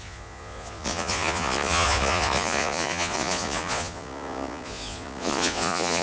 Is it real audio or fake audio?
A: fake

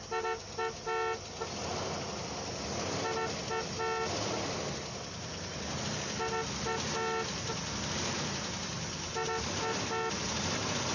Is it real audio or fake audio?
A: real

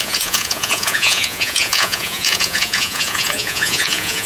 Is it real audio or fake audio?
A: fake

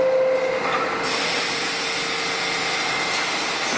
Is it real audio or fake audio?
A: real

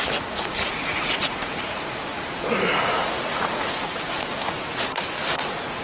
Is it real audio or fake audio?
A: fake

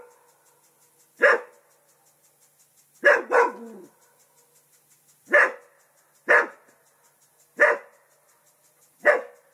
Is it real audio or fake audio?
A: real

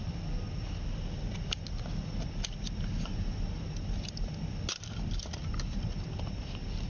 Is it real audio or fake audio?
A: real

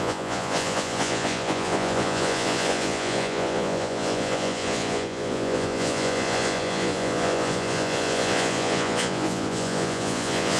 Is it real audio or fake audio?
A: fake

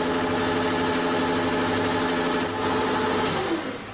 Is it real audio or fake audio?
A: real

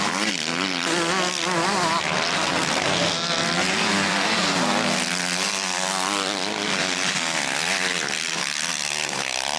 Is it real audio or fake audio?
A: real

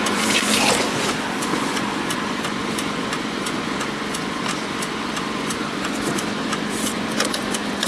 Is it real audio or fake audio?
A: fake